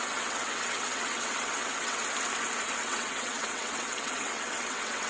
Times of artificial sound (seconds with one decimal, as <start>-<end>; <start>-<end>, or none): 0.0-2.0; 2.6-5.1